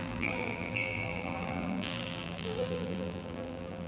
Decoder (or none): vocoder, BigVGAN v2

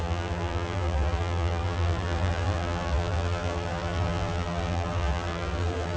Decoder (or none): vocoder, BigVGAN v2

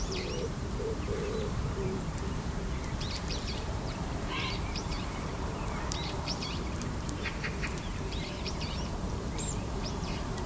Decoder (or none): vocoder, BigVGAN v2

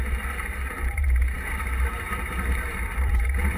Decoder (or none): vocoder, BigVGAN v2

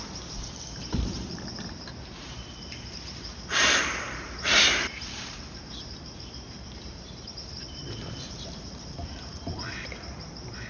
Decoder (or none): vocoder, BigVGAN v2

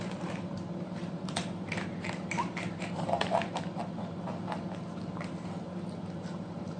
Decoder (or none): vocoder, BigVGAN v2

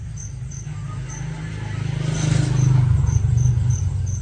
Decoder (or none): none